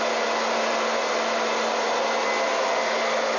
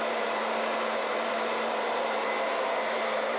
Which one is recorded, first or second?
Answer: first